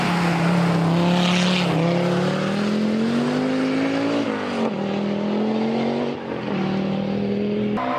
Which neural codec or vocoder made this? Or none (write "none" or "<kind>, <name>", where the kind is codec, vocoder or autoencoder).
none